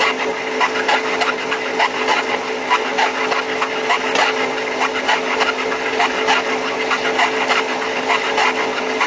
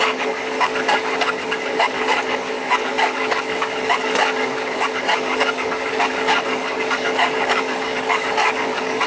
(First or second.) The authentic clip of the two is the first